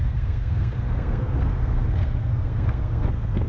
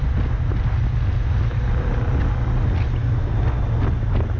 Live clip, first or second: second